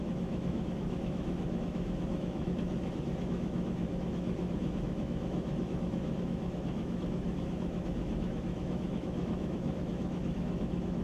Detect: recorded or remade remade